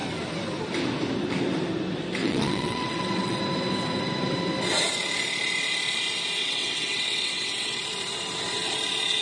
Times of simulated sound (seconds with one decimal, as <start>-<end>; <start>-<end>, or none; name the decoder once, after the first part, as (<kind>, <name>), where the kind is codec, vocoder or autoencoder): 2.2-3.4 (vocoder, WaveNeXt); 6.4-7.8